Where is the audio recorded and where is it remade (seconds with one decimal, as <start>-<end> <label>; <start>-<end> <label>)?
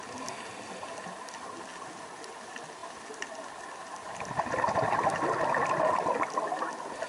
0.0-7.1 recorded